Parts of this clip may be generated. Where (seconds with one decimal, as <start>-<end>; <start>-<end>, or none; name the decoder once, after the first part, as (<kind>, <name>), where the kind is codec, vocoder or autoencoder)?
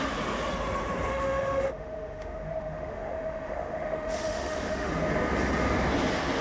1.1-4.9 (autoencoder, DAC-VAE)